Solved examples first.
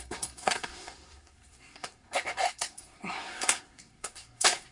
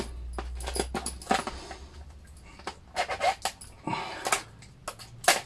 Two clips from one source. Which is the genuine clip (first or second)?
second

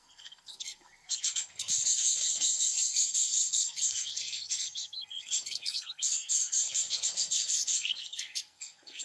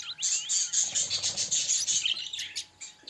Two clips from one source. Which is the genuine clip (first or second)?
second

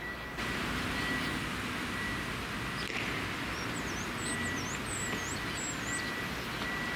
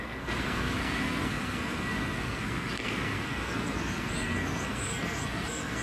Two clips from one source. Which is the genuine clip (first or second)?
first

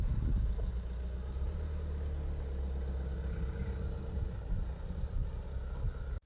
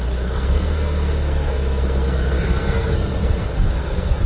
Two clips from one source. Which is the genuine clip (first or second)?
first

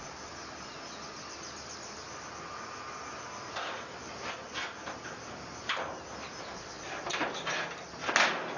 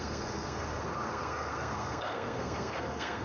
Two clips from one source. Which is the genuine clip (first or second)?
first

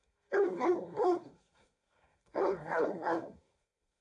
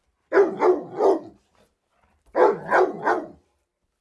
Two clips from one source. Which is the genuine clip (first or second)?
second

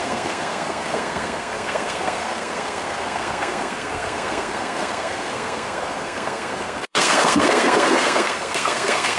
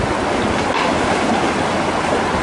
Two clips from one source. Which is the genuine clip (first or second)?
second